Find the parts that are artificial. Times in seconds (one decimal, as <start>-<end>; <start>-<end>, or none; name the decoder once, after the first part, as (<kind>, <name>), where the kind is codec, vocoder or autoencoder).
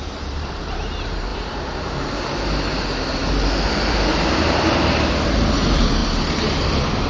0.0-6.0 (vocoder, BigVGAN v2)